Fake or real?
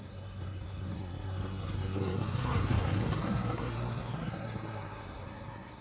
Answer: fake